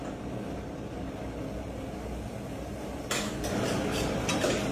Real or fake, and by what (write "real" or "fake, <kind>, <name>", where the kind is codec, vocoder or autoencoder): real